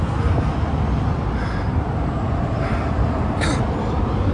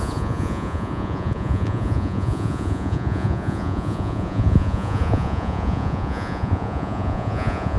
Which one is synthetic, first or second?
second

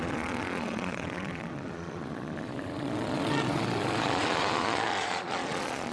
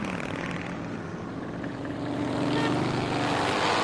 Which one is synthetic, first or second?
first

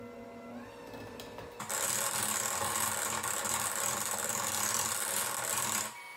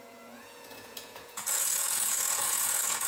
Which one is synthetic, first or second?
second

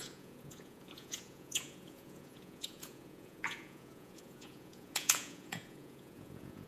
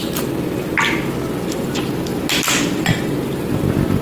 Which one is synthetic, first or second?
first